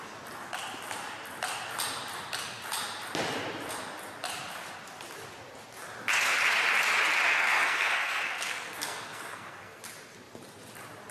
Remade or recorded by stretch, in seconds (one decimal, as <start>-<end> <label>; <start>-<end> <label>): 0.0-7.3 recorded; 7.3-9.8 remade; 9.8-11.1 recorded